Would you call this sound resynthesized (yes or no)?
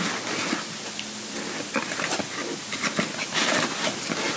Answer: no